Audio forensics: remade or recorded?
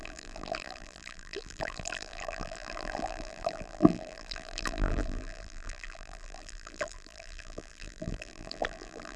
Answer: remade